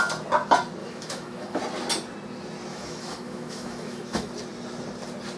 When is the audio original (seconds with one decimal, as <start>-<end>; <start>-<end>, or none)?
0.0-0.8; 1.6-2.7; 4.3-5.4